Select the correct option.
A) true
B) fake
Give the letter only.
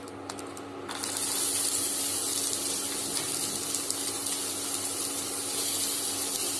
A